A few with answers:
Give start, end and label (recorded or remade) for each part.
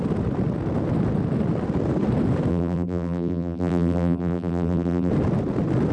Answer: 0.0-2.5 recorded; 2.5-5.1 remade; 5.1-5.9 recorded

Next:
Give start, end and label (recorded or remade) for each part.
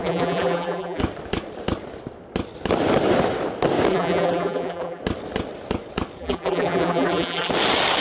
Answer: 0.0-1.0 remade; 1.0-3.9 recorded; 3.9-5.0 remade; 5.0-6.2 recorded; 6.2-7.5 remade; 7.5-8.0 recorded